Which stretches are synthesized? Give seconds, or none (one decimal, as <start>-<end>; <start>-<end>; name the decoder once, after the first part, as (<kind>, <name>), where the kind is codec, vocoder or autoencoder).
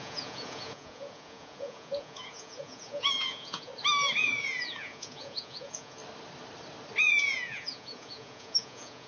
0.0-3.7 (vocoder, Vocos); 4.2-6.0; 7.0-9.1